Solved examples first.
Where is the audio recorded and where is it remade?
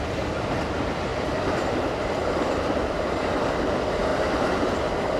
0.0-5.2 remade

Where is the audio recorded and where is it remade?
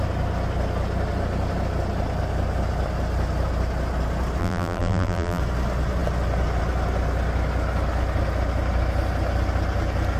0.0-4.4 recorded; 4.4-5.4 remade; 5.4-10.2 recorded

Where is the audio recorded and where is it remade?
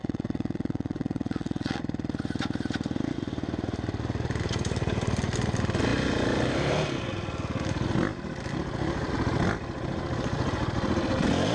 0.0-1.8 remade; 1.8-11.5 recorded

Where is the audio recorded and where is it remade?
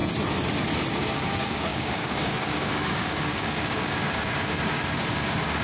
0.0-0.9 recorded; 0.9-5.6 remade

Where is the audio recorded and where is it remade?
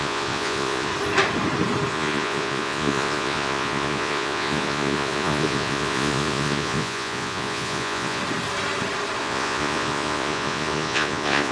0.0-0.9 remade; 0.9-1.9 recorded; 1.9-8.2 remade; 8.2-9.2 recorded; 9.2-11.5 remade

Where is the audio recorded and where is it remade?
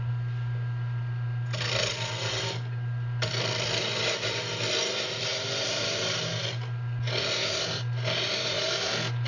0.0-9.3 recorded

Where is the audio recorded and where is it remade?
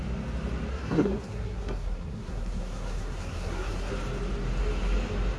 0.0-0.7 recorded; 0.7-3.9 remade; 3.9-5.4 recorded